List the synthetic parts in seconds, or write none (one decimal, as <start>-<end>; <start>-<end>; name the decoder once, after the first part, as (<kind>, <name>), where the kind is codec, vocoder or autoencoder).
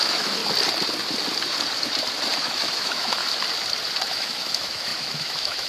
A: 0.0-0.4 (autoencoder, DAC-VAE); 2.4-3.2; 4.1-5.7